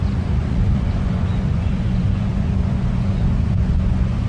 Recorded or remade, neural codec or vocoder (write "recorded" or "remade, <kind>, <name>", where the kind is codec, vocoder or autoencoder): remade, vocoder, Vocos